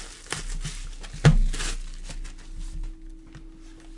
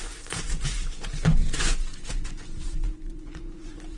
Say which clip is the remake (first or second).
second